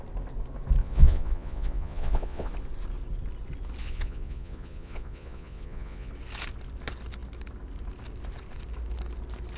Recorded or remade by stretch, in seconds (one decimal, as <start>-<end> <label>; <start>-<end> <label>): 0.0-0.8 recorded; 0.8-2.5 remade; 2.5-3.8 recorded; 3.8-6.1 remade; 6.1-9.6 recorded